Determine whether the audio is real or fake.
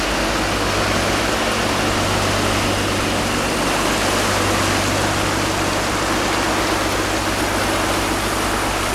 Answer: real